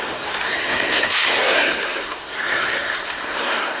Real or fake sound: fake